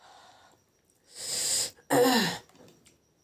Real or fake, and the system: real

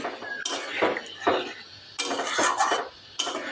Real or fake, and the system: real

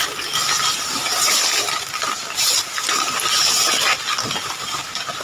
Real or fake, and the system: real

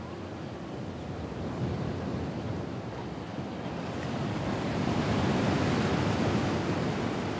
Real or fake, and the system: real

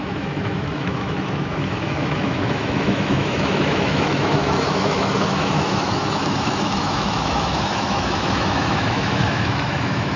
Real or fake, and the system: fake, autoencoder, DAC-VAE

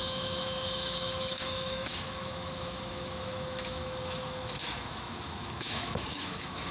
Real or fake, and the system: fake, autoencoder, DAC-VAE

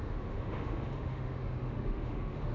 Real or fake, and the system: fake, autoencoder, DAC-VAE